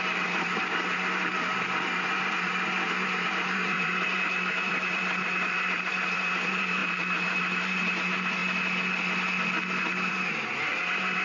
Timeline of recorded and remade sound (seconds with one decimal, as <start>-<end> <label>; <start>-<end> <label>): 0.0-8.4 remade; 8.4-10.1 recorded; 10.1-11.2 remade